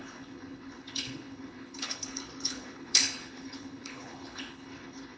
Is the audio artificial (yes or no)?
yes